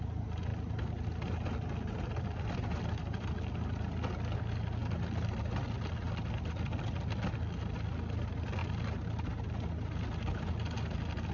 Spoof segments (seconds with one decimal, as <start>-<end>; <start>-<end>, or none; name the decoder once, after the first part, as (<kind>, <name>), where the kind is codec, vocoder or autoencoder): none